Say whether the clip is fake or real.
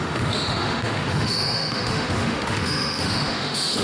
fake